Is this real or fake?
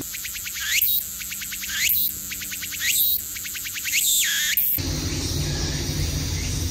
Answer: real